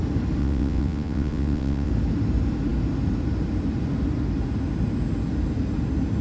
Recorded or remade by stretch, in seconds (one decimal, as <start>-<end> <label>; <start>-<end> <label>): 0.0-0.4 recorded; 0.4-1.9 remade; 1.9-6.2 recorded